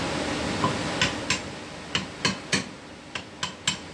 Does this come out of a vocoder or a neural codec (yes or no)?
no